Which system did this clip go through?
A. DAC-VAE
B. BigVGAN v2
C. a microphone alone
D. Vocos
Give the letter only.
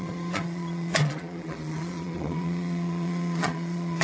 D